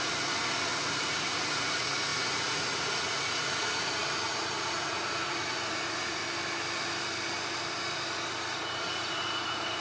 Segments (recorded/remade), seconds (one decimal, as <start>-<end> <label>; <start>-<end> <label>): 0.0-6.2 remade; 6.2-8.5 recorded; 8.5-9.8 remade